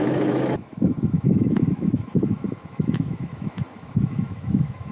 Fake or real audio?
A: fake